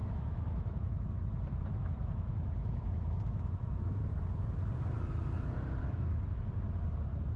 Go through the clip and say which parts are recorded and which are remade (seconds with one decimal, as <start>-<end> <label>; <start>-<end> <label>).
0.0-4.1 remade; 4.1-5.8 recorded; 5.8-6.4 remade; 6.4-7.4 recorded